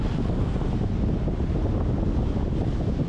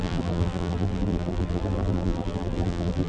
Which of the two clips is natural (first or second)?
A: first